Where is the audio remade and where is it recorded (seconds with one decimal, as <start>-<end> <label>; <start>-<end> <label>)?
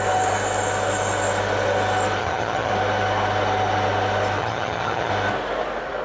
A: 0.0-2.2 recorded; 2.2-2.7 remade; 2.7-4.4 recorded; 4.4-5.1 remade; 5.1-6.0 recorded